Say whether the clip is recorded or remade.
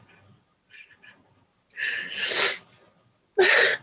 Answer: recorded